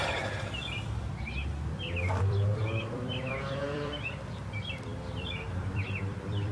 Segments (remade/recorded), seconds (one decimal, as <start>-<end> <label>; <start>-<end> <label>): 0.0-2.1 recorded; 2.1-6.5 remade